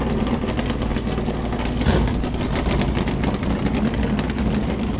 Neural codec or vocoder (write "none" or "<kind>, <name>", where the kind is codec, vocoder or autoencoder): none